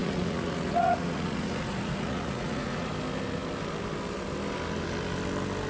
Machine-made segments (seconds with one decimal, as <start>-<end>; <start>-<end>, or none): 0.0-2.9